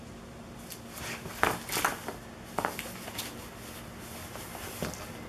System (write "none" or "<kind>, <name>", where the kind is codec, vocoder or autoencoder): none